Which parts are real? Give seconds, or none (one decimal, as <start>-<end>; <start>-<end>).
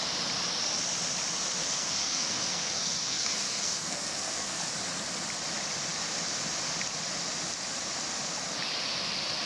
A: 0.0-1.6; 4.7-9.5